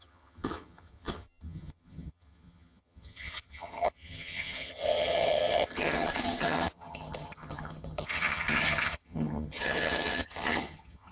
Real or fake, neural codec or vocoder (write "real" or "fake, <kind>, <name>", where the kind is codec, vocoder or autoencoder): fake, vocoder, HiFi-GAN